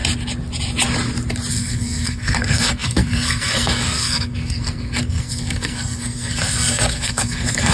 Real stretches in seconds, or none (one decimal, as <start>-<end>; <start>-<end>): 0.0-1.5